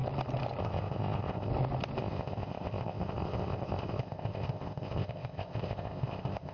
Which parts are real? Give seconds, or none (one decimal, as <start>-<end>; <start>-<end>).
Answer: 0.0-0.6; 1.5-2.0